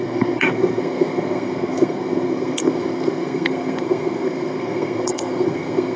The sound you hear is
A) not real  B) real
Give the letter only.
A